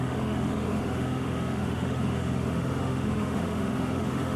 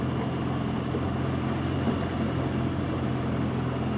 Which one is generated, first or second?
first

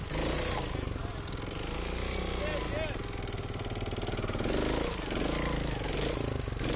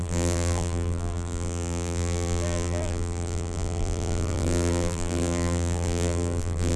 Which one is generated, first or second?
second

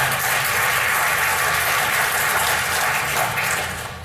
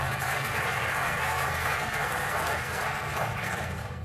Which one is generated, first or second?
second